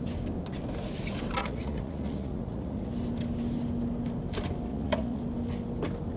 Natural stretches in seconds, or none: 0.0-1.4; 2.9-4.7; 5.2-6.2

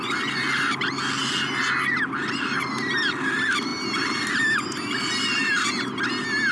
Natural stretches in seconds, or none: 0.0-6.5